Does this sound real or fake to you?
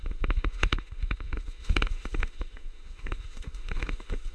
fake